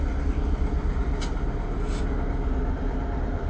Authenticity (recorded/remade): recorded